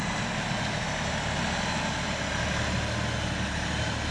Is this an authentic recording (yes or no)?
yes